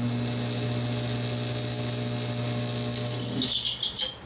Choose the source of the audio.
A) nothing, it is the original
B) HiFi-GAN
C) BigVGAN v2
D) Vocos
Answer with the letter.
A